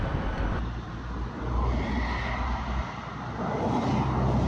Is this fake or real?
real